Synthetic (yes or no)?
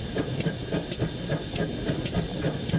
no